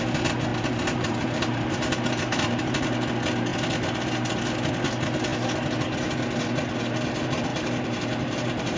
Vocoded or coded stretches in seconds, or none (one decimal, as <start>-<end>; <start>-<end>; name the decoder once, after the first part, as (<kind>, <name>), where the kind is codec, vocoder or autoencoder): 0.5-2.7 (vocoder, BigVGAN v2); 7.5-8.8